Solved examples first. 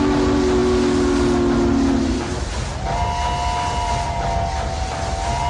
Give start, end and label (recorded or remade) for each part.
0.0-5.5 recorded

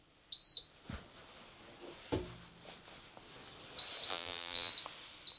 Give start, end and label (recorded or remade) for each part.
0.0-4.1 recorded; 4.1-4.7 remade; 4.7-5.4 recorded

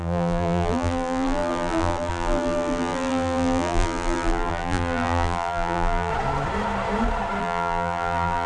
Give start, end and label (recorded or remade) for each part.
0.0-6.1 remade; 6.1-7.4 recorded; 7.4-8.5 remade

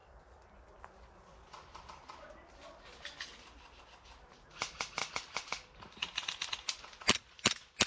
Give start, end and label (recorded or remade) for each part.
0.0-7.9 recorded

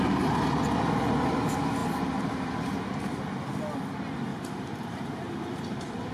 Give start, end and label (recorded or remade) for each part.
0.0-4.3 recorded; 4.3-6.1 remade

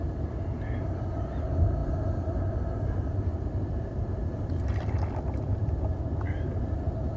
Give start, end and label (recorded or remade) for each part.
0.0-1.8 recorded; 1.8-2.4 remade; 2.4-3.3 recorded; 3.3-5.9 remade; 5.9-7.2 recorded

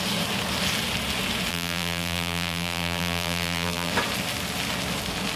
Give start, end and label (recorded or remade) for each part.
0.0-1.5 recorded; 1.5-3.9 remade; 3.9-5.4 recorded

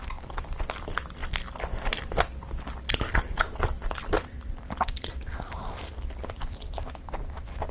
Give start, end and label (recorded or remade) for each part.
0.0-1.2 remade; 1.2-2.7 recorded; 2.7-7.7 remade